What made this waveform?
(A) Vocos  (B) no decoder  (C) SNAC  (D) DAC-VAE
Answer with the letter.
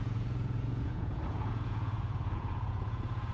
A